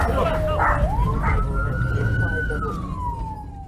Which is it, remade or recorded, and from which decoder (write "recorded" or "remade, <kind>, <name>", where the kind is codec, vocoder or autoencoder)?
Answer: recorded